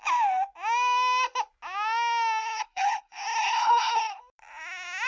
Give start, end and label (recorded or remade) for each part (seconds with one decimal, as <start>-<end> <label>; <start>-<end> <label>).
0.0-2.4 recorded; 2.4-4.2 remade; 4.2-5.1 recorded